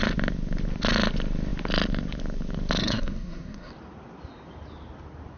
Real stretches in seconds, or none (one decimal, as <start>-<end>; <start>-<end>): 0.0-2.8; 3.7-5.4